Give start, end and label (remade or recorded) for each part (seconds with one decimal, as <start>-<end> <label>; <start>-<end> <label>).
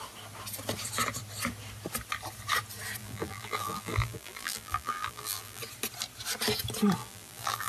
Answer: 0.0-3.0 recorded; 3.0-5.6 remade; 5.6-7.0 recorded; 7.0-7.7 remade